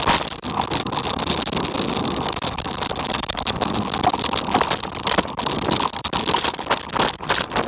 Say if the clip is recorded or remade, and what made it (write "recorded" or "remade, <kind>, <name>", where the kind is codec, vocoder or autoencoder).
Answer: remade, vocoder, BigVGAN v2